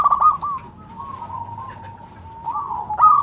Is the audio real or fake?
real